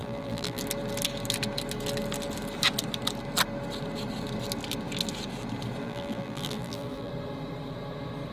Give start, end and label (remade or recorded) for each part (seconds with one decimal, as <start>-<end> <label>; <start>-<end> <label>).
0.0-0.6 remade; 0.6-5.8 recorded; 5.8-7.1 remade; 7.1-8.3 recorded